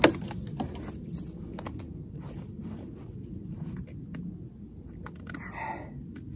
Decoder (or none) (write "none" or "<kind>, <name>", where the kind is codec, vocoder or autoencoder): none